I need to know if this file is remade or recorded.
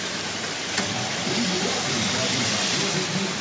remade